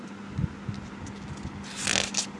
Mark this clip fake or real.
real